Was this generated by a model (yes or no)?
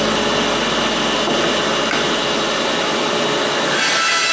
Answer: no